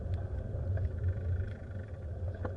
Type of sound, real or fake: real